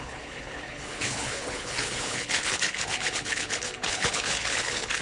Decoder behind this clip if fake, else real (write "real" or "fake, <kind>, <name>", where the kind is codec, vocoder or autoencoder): fake, codec, HILCodec